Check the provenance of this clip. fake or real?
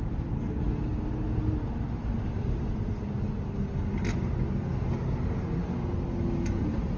real